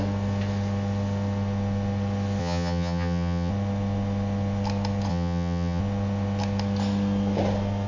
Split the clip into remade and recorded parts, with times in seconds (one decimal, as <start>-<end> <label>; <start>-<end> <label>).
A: 0.0-2.4 recorded; 2.4-3.5 remade; 3.5-5.1 recorded; 5.1-5.8 remade; 5.8-7.9 recorded